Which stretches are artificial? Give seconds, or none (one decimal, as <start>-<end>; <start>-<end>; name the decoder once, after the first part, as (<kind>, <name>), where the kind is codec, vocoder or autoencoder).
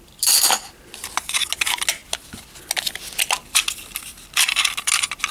none